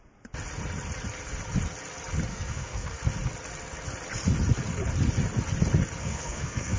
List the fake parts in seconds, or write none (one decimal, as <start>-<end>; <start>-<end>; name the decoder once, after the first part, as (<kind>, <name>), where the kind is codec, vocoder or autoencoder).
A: 2.3-3.0 (codec, SNAC); 6.0-6.8